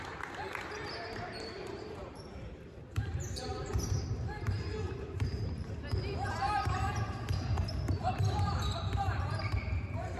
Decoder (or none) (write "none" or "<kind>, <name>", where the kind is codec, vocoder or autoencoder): vocoder, BigVGAN v2